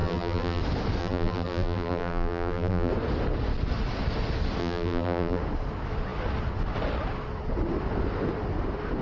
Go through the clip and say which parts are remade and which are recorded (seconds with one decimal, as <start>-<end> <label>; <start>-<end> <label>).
0.0-0.6 remade; 0.6-1.0 recorded; 1.0-2.9 remade; 2.9-4.6 recorded; 4.6-5.4 remade; 5.4-9.0 recorded